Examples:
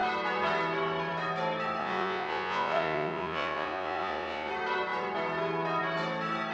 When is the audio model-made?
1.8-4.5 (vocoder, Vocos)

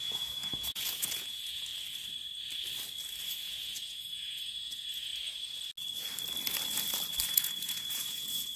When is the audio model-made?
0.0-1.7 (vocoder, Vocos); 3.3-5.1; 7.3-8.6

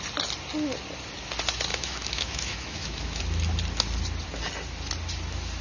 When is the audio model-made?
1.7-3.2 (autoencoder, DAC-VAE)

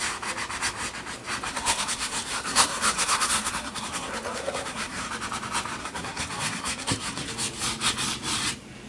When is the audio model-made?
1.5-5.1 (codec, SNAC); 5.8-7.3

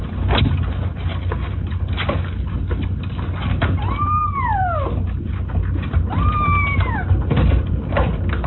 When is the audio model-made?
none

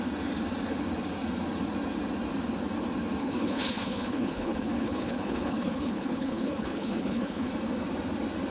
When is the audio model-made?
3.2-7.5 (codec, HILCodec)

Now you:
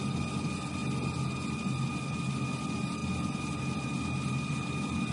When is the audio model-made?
none